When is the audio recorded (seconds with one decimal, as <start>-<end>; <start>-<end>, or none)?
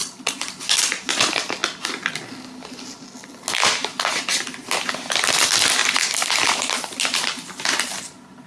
1.1-5.8; 8.0-8.5